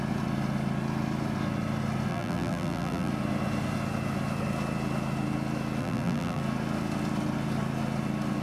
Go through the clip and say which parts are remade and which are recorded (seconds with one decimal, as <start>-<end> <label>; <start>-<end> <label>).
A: 0.0-2.1 recorded; 2.1-3.1 remade; 3.1-5.8 recorded; 5.8-6.4 remade; 6.4-8.4 recorded